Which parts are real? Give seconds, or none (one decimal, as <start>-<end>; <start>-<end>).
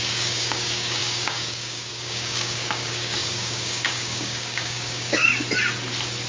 5.3-6.3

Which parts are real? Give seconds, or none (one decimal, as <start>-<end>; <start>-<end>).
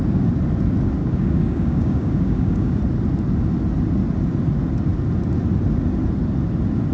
0.0-1.0; 2.8-6.9